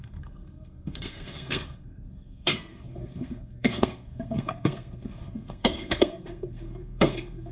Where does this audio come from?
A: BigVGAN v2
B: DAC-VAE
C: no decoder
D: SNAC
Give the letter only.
D